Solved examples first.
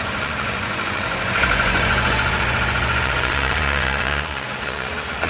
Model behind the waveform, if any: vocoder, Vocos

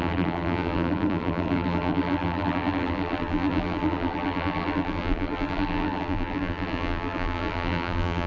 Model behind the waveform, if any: vocoder, BigVGAN v2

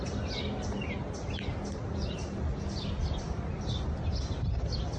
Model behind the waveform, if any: none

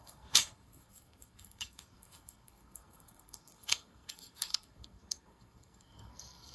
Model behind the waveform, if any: codec, SNAC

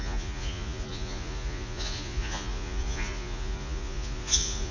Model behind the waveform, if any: vocoder, Vocos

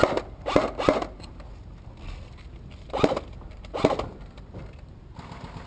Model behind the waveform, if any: none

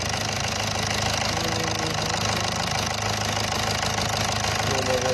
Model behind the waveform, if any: none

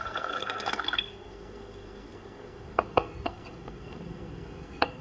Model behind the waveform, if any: codec, SNAC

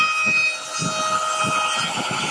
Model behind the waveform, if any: none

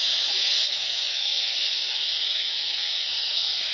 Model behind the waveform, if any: codec, SNAC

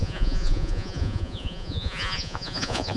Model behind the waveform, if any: vocoder, Vocos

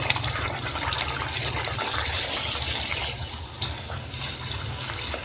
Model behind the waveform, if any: none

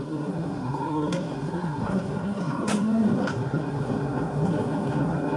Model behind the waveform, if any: codec, SNAC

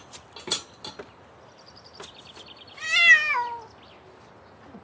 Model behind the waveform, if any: none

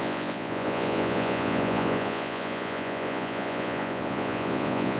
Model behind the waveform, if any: vocoder, Vocos